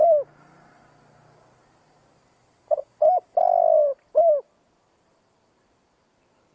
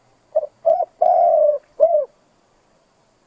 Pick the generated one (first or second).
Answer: second